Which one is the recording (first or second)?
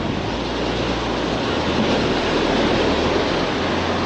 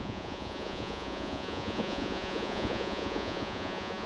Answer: first